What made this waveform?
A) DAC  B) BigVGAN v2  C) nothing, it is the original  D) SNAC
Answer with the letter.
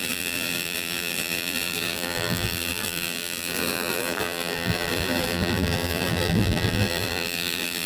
B